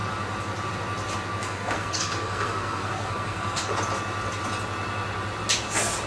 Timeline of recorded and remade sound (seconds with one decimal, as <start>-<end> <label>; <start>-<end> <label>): 0.0-1.4 recorded; 1.4-3.7 remade; 3.7-6.1 recorded